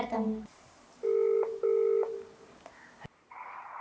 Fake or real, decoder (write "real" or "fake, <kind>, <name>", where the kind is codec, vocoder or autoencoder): real